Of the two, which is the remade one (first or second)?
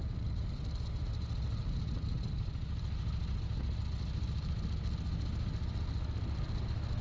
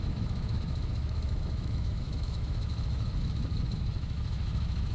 second